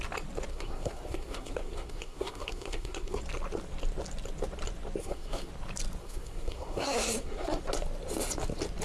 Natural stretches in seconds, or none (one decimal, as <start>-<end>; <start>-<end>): 0.0-0.5; 3.2-5.0; 5.5-6.0; 7.6-8.8